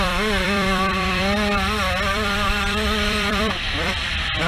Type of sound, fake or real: fake